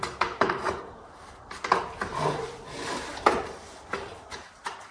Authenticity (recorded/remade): remade